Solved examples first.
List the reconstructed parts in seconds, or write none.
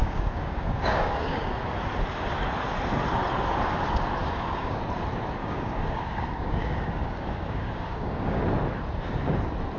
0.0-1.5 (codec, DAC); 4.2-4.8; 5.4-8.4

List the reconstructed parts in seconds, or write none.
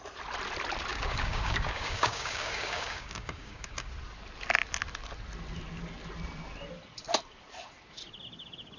0.9-3.9 (codec, DAC)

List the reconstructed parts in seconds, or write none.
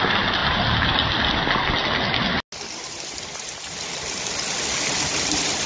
none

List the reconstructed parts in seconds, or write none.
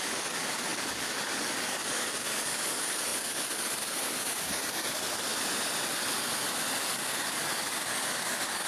0.0-5.3 (codec, DAC); 6.8-8.7